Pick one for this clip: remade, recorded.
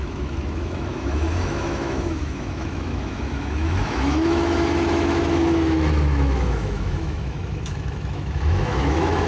remade